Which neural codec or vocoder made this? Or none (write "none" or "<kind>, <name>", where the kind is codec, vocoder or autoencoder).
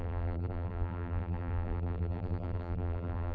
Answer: vocoder, BigVGAN v2